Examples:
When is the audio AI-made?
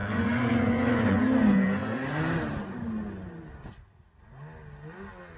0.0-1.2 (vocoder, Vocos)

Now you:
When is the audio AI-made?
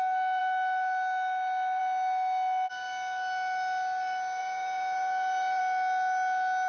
4.4-5.6 (vocoder, Vocos)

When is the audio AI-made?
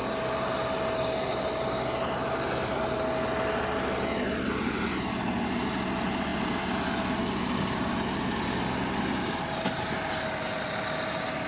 none